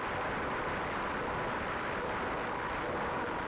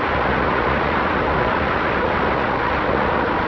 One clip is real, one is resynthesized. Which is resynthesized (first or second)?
second